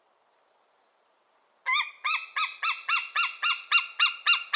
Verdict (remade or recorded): recorded